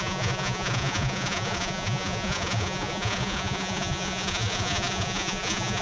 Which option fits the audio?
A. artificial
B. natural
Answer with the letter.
A